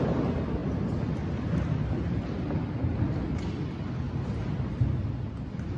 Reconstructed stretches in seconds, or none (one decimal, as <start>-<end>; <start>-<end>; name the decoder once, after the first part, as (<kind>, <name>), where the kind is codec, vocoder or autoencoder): none